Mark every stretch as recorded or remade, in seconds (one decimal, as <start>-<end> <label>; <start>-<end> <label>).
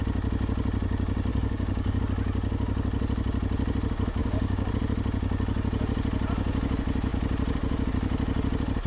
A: 0.0-1.3 recorded; 1.3-2.0 remade; 2.0-4.2 recorded; 4.2-4.7 remade; 4.7-8.9 recorded